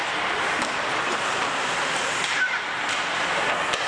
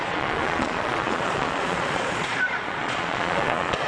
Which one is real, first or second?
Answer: first